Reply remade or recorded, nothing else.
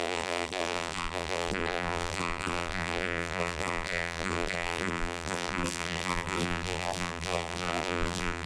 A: remade